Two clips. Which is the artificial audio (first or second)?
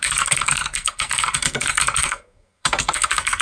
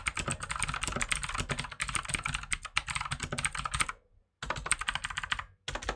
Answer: first